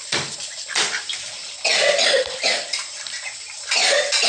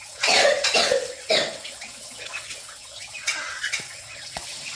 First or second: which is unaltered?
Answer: first